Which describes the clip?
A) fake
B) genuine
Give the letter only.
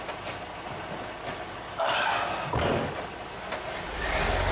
B